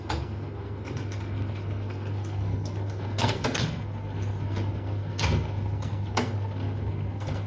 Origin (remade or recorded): remade